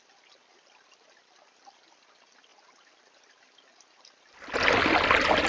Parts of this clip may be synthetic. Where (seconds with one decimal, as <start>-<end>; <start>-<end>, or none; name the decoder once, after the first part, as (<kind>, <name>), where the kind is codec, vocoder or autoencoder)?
none